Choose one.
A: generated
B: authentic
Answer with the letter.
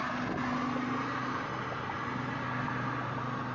B